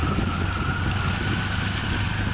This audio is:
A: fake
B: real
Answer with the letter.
B